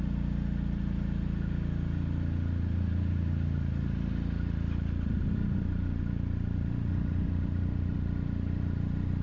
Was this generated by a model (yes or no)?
no